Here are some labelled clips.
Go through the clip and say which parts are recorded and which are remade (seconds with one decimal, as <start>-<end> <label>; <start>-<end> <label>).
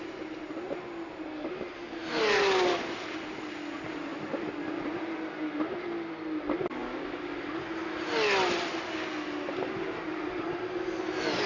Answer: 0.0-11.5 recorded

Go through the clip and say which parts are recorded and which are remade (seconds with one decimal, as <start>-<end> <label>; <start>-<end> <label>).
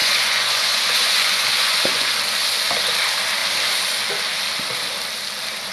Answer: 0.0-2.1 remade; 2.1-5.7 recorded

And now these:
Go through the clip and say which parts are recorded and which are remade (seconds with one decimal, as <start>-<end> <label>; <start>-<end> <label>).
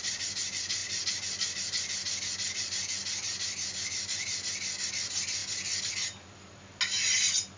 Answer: 0.0-7.6 recorded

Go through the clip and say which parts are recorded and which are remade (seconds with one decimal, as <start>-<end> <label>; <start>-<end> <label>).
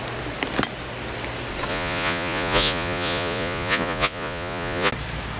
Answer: 0.0-1.7 recorded; 1.7-4.9 remade; 4.9-5.4 recorded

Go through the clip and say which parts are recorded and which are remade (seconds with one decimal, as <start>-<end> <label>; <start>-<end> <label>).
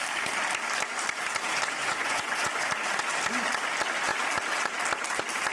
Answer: 0.0-1.8 recorded; 1.8-2.6 remade; 2.6-5.5 recorded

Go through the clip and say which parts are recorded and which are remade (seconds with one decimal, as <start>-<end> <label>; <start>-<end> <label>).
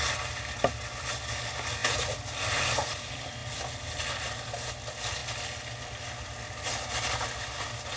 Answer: 0.0-8.0 recorded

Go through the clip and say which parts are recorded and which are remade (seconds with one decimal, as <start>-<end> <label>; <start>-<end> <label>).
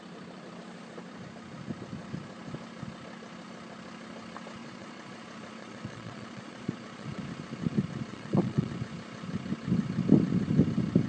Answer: 0.0-4.6 recorded; 4.6-7.2 remade; 7.2-8.1 recorded; 8.1-8.7 remade; 8.7-11.1 recorded